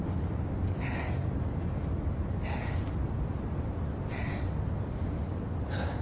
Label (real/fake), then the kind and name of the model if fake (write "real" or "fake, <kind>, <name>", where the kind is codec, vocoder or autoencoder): real